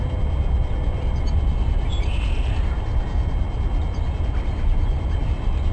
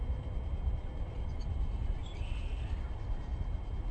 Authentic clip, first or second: first